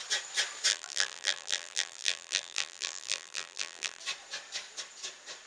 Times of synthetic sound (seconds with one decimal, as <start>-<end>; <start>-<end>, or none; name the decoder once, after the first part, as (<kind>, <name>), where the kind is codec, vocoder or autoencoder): 0.7-4.0 (vocoder, BigVGAN v2)

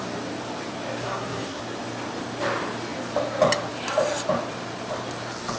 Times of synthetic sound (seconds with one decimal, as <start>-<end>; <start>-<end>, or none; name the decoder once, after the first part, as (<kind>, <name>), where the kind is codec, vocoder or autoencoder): 1.0-1.6 (codec, SNAC)

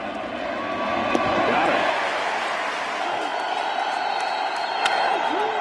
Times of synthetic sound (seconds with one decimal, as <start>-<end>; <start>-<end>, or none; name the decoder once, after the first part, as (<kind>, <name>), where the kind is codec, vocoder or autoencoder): 1.0-2.2 (vocoder, Vocos)

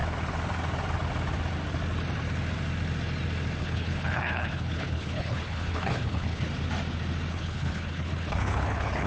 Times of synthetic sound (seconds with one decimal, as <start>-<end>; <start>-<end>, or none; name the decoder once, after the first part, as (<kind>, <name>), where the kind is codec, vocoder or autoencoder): 3.6-6.5 (codec, HILCodec); 7.3-9.1

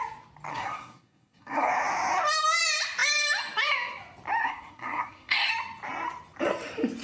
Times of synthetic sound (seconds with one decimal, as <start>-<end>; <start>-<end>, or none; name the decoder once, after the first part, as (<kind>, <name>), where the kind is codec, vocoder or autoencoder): 0.5-1.7 (codec, SNAC); 4.4-5.5

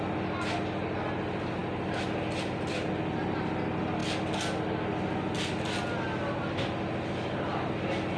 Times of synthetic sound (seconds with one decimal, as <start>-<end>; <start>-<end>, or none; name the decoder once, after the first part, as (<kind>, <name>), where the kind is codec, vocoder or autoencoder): none

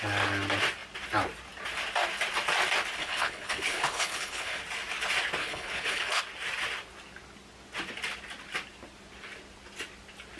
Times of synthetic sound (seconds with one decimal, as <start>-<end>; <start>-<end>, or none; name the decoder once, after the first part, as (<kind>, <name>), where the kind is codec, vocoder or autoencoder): 3.0-4.6 (codec, HILCodec); 5.4-6.2